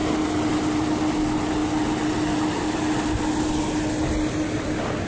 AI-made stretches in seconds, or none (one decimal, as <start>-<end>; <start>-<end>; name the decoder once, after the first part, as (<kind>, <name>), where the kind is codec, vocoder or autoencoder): none